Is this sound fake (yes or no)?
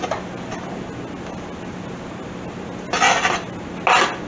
no